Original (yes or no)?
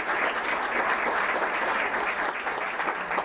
yes